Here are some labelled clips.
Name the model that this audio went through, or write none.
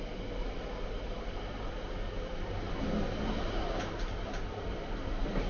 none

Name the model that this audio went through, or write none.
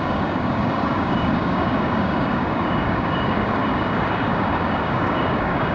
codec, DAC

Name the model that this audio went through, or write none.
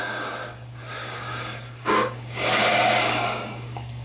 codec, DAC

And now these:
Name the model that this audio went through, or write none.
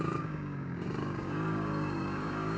codec, DAC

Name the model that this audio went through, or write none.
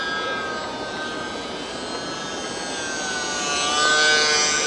none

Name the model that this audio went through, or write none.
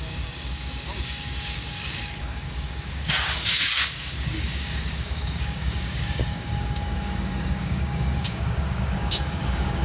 codec, DAC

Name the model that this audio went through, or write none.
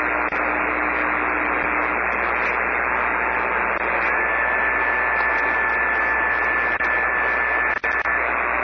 none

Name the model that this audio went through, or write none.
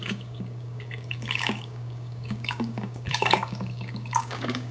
codec, DAC